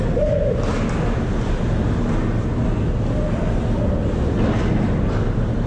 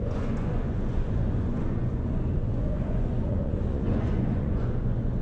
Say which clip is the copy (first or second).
second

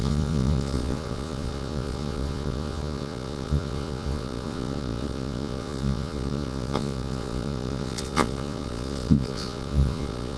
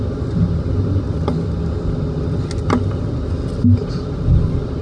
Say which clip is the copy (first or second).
first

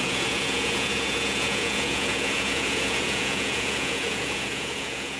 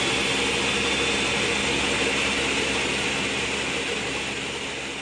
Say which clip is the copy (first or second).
first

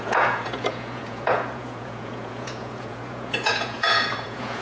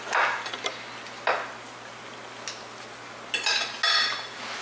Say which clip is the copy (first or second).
first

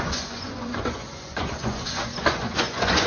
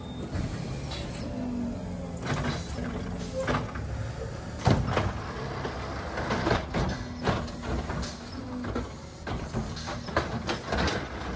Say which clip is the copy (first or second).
first